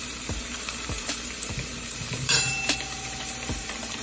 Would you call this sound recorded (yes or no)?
no